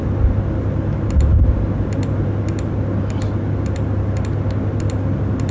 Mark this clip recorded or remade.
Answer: recorded